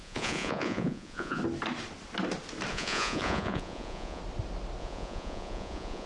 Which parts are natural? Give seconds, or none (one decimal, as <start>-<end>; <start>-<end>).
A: 1.4-2.7; 4.2-4.8